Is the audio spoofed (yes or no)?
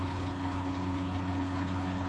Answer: yes